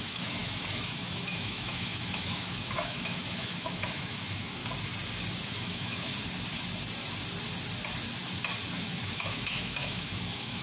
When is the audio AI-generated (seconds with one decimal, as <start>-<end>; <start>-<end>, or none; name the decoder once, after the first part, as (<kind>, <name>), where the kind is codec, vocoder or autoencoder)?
0.0-4.6 (autoencoder, DAC-VAE); 5.3-6.1; 9.0-10.6